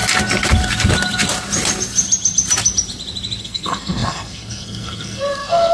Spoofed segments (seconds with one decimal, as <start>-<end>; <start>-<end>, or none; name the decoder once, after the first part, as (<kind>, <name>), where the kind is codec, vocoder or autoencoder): 3.4-5.7 (codec, SNAC)